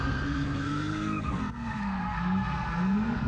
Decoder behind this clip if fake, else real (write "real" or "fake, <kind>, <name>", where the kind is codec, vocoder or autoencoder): fake, codec, SNAC